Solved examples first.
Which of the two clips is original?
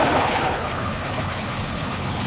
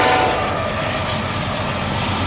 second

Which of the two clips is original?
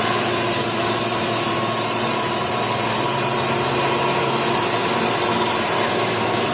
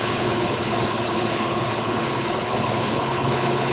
first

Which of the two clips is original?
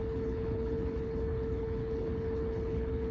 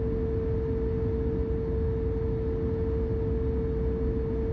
second